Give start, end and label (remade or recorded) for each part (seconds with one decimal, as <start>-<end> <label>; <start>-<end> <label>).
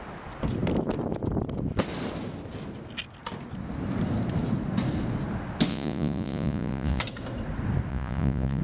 0.0-5.7 recorded; 5.7-7.0 remade; 7.0-7.9 recorded; 7.9-8.6 remade